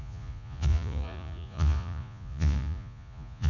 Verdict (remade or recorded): remade